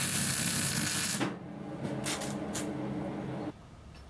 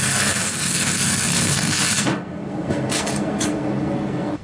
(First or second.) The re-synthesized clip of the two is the second